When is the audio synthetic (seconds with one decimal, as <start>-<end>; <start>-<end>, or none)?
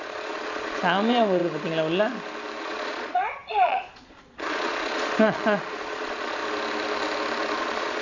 0.0-1.4; 2.6-6.4; 7.6-8.0